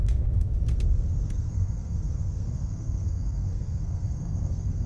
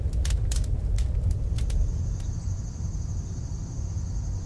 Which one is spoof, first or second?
first